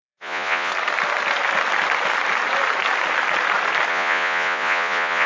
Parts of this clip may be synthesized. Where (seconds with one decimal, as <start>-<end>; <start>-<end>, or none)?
0.0-0.7; 3.9-5.3